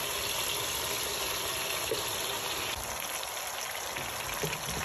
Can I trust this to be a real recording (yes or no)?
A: yes